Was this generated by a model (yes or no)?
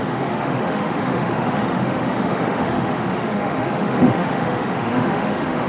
yes